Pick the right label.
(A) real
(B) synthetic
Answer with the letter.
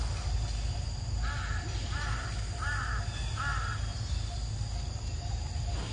A